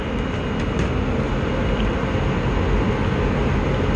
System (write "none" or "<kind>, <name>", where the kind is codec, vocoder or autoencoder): none